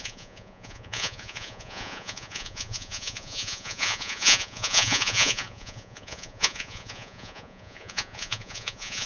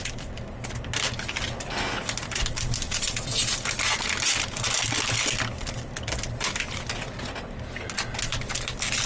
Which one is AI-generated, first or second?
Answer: first